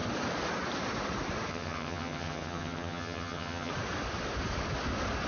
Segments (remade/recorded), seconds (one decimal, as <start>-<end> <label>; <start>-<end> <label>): 0.0-1.5 recorded; 1.5-3.7 remade; 3.7-5.3 recorded